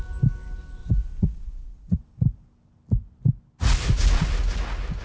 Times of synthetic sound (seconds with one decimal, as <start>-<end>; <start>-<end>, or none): 0.8-2.0